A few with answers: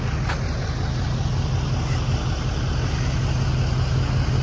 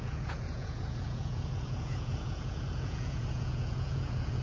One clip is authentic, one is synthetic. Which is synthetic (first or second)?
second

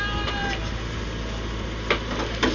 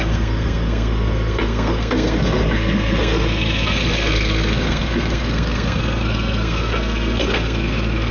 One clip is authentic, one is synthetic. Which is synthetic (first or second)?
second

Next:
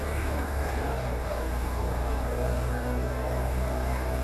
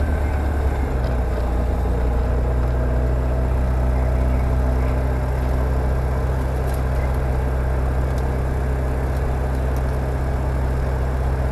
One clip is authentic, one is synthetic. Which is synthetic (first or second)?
first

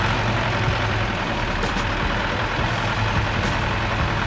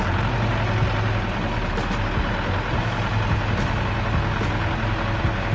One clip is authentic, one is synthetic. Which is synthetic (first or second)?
first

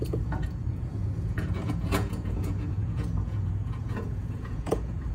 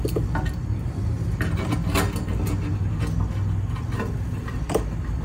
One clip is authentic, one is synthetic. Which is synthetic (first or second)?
first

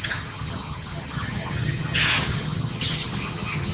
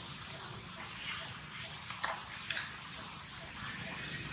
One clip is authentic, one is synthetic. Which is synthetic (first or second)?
first